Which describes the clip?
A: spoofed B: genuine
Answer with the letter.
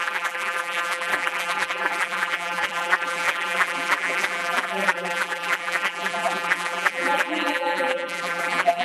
A